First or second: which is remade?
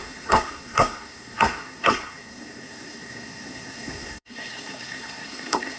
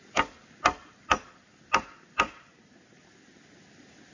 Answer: first